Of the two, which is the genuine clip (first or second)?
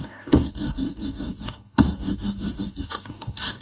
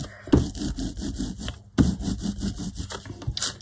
second